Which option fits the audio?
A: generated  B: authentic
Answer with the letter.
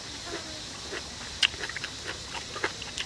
B